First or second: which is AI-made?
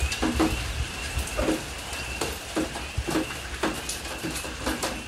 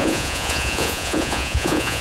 second